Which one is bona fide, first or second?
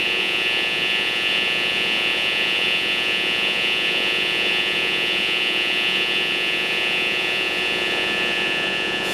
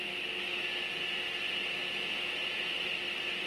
second